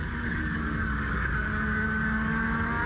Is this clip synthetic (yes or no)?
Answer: yes